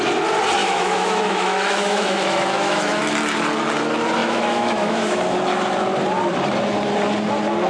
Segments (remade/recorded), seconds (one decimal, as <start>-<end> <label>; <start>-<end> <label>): 0.0-0.6 recorded; 0.6-3.0 remade; 3.0-4.2 recorded; 4.2-5.2 remade; 5.2-7.7 recorded